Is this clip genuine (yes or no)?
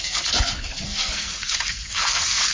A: no